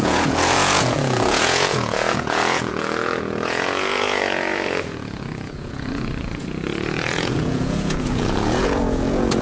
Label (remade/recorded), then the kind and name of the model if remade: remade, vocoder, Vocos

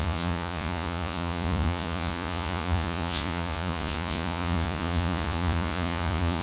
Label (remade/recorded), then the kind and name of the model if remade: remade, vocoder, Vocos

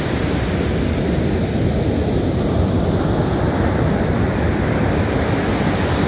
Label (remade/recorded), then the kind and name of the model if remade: recorded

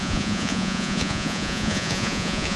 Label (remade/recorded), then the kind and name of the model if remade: remade, vocoder, Vocos